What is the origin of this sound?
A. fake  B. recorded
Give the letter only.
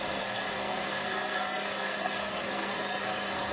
A